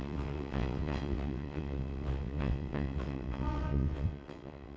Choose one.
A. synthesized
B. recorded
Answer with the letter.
A